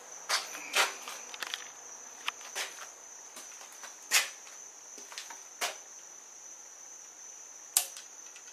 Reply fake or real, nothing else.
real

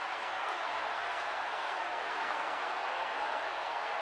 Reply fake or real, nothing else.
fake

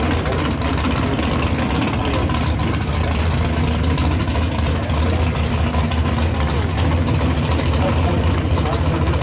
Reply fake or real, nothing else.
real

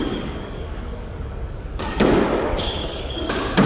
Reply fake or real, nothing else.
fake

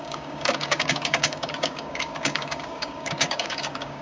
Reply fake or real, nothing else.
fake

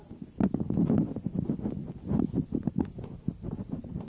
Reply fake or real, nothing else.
real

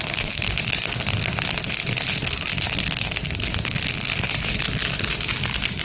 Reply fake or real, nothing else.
real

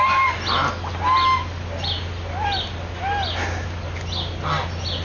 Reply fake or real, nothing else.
real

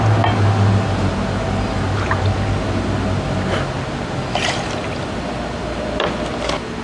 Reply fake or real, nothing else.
real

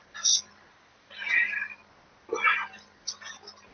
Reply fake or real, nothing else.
real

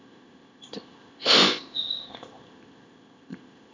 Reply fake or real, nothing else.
fake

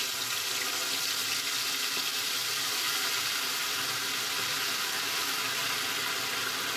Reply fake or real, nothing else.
real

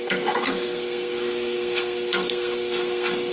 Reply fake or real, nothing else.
fake